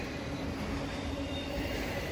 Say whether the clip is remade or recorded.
remade